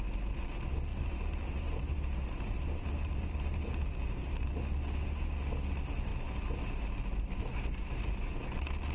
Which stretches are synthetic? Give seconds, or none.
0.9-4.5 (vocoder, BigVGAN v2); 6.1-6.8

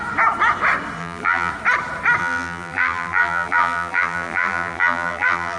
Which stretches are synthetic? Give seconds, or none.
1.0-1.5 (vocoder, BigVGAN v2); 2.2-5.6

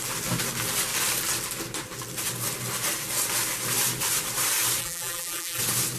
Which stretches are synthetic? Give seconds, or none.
4.8-5.6 (vocoder, BigVGAN v2)

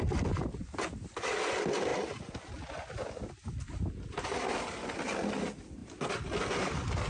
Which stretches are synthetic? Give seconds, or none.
none

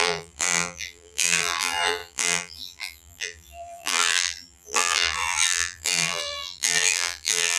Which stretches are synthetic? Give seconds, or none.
0.0-7.6 (vocoder, BigVGAN v2)